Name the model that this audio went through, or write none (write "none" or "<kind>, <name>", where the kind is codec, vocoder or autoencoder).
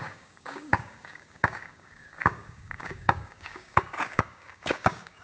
codec, DAC